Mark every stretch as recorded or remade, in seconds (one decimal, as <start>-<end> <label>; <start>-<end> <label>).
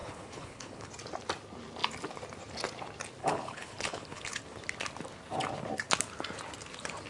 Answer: 0.0-0.9 remade; 0.9-3.2 recorded; 3.2-4.4 remade; 4.4-7.1 recorded